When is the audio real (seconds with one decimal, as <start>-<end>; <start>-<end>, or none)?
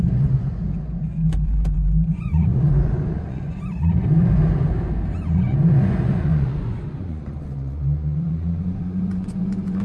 4.4-5.2